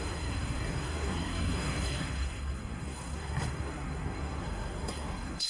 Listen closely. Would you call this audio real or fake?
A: fake